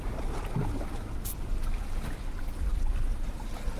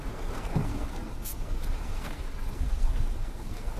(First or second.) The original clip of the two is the first